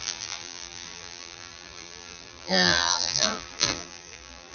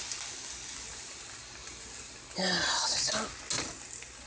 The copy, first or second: first